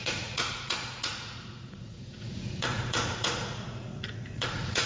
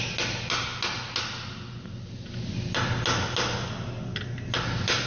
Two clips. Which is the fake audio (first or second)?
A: first